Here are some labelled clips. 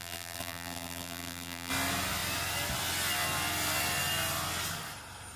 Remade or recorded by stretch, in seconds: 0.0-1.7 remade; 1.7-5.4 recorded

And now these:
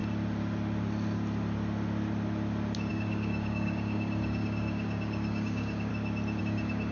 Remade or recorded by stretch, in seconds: 0.0-2.9 recorded; 2.9-5.9 remade; 5.9-6.4 recorded; 6.4-6.9 remade